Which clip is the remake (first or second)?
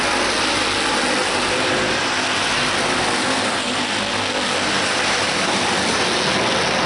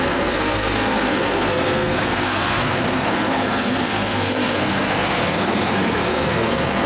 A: second